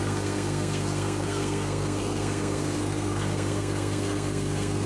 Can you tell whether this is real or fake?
fake